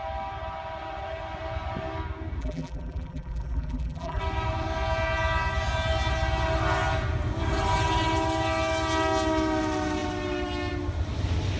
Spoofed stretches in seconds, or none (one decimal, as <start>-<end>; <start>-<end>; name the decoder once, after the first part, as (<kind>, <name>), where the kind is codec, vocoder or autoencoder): 2.4-4.2 (vocoder, BigVGAN v2)